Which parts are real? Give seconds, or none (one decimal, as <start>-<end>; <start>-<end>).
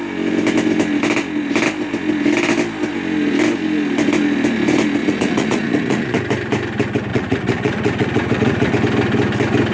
0.0-5.0; 6.2-7.1; 8.7-9.7